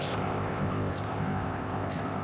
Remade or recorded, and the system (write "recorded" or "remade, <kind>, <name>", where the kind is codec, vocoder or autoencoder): remade, codec, ZipCodec